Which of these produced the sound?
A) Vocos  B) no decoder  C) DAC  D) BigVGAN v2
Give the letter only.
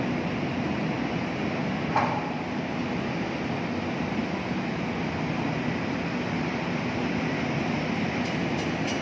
B